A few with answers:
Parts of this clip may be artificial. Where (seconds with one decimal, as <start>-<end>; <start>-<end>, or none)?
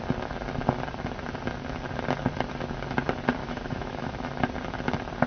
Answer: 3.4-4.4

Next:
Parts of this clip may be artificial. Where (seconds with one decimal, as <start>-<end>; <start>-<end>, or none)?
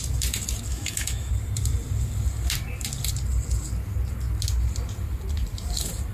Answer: 0.7-1.3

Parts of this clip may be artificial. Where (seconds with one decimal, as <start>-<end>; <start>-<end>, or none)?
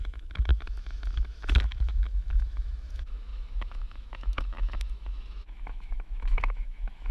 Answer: 0.0-7.1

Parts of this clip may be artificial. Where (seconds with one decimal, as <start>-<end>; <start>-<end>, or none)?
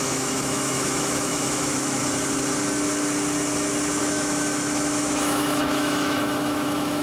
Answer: 0.0-2.0; 4.0-7.0